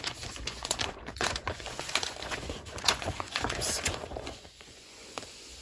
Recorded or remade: remade